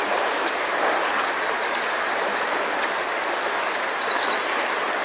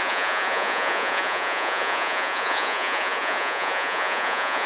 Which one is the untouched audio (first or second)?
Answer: first